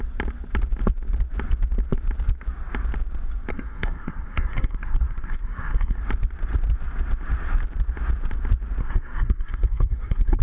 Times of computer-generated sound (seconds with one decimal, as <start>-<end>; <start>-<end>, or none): 3.5-6.0; 8.8-10.4